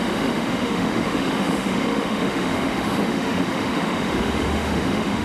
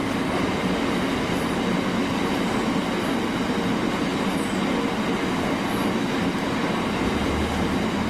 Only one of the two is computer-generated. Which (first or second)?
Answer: first